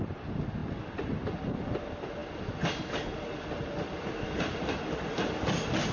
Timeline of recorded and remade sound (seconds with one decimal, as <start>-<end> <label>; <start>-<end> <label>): 0.0-5.9 recorded